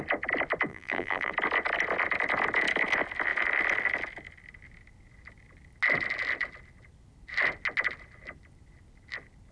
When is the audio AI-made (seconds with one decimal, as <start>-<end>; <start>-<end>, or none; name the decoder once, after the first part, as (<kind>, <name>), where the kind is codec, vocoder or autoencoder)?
0.7-1.3 (vocoder, BigVGAN v2)

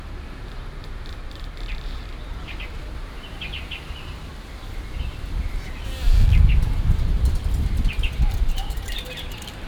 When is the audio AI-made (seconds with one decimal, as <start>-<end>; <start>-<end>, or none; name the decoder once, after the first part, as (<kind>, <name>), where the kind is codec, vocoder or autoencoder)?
0.0-4.3 (vocoder, BigVGAN v2); 6.6-9.7